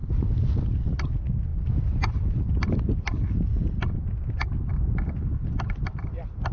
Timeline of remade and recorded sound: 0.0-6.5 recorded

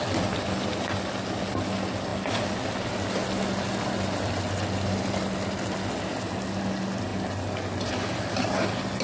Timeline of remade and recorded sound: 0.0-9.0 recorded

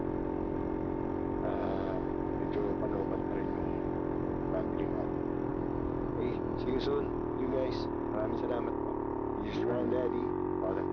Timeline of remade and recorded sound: 0.0-10.9 recorded

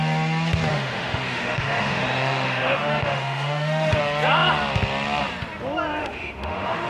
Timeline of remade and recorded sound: 0.0-0.7 recorded; 0.7-4.0 remade; 4.0-6.0 recorded; 6.0-6.9 remade

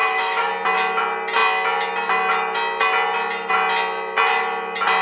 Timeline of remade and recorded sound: 0.0-0.5 remade; 0.5-5.0 recorded

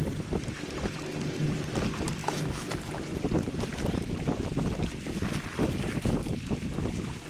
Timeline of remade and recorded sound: 0.0-2.2 recorded; 2.2-2.7 remade; 2.7-7.3 recorded